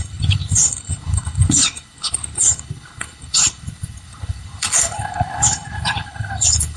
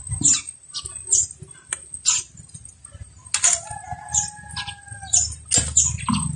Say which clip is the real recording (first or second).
second